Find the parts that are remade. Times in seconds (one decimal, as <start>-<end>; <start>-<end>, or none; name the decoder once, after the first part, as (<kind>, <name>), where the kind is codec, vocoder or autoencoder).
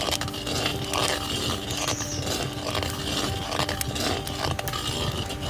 none